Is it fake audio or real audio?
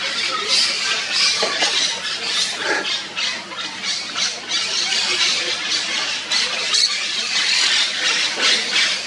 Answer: real